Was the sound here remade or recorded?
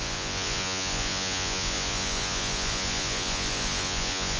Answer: remade